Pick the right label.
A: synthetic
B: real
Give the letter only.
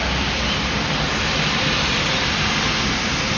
B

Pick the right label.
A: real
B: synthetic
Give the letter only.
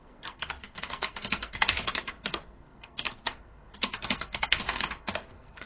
B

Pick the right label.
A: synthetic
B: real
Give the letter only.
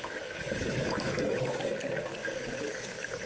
A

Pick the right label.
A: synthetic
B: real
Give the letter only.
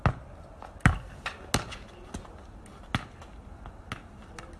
B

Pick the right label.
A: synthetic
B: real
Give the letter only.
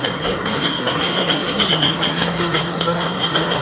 A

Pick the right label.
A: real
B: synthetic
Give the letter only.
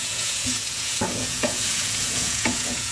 B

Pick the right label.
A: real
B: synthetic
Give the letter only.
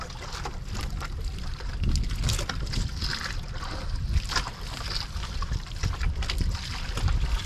A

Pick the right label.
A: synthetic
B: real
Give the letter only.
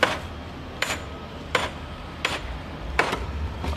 A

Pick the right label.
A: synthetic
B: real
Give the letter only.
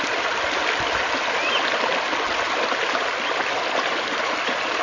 B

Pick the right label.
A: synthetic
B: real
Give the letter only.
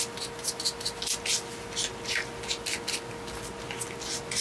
B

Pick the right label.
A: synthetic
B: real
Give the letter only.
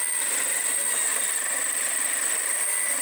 B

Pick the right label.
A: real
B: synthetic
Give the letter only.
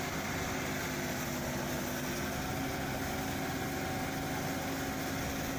A